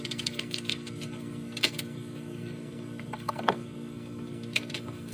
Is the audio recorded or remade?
remade